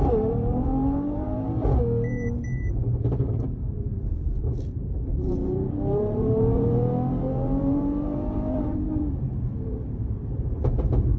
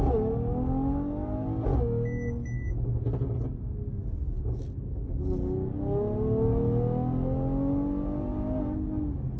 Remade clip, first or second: first